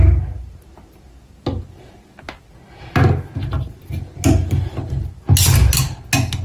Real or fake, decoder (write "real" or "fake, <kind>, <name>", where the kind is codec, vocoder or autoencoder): real